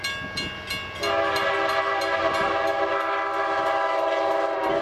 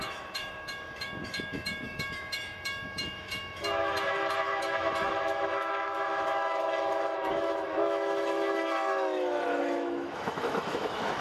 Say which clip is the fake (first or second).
second